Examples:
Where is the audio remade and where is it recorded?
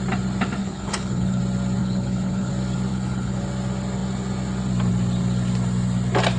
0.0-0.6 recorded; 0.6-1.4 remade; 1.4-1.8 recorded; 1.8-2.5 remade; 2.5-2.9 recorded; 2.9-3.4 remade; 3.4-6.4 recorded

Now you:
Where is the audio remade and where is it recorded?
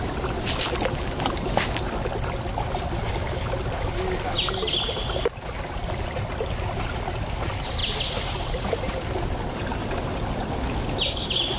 0.0-11.6 recorded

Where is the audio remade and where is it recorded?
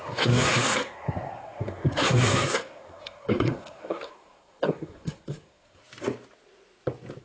0.0-5.8 remade; 5.8-7.2 recorded